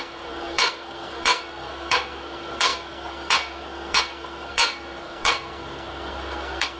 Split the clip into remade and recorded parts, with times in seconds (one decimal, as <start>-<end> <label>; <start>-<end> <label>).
0.0-6.8 remade